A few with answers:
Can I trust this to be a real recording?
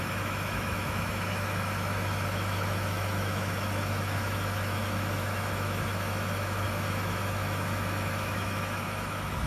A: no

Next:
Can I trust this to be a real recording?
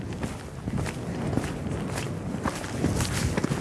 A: yes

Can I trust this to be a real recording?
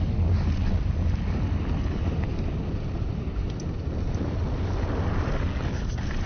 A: yes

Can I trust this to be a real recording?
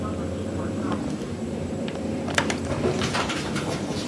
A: no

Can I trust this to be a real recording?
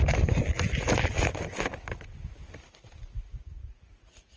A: yes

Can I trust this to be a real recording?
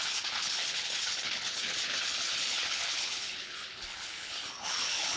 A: no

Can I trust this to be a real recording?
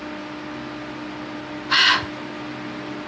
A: yes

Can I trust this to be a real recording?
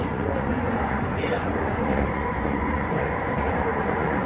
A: no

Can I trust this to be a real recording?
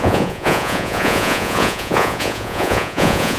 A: no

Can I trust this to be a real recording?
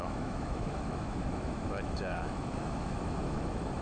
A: no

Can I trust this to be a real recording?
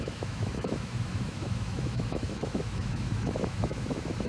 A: no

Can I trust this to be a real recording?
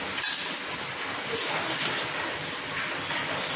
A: yes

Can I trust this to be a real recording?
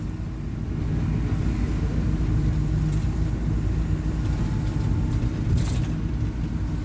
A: yes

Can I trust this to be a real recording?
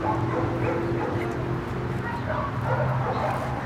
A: yes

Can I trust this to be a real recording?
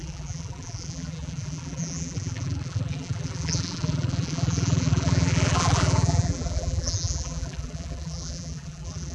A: no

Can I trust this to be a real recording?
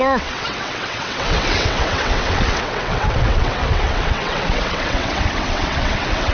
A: no